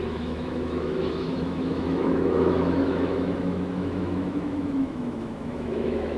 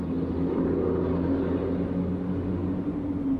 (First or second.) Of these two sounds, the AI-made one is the first